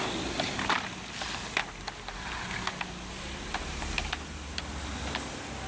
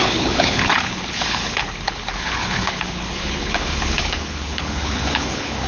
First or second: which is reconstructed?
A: second